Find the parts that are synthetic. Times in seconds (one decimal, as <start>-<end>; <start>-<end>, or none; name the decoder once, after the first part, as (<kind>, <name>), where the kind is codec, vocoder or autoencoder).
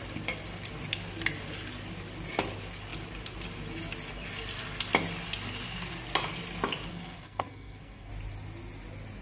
6.9-8.1 (codec, SNAC)